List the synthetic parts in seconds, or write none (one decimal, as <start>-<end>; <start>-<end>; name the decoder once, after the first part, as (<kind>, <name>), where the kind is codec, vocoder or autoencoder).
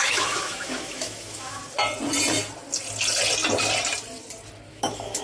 0.0-1.6 (autoencoder, DAC-VAE); 4.7-5.2